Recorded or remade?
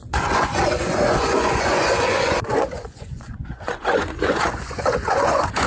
remade